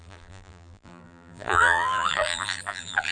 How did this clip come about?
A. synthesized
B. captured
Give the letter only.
A